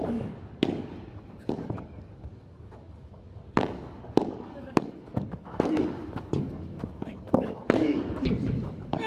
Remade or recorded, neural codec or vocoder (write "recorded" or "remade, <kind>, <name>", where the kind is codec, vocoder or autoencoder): remade, codec, DAC